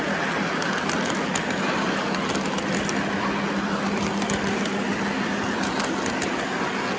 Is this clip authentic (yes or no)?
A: yes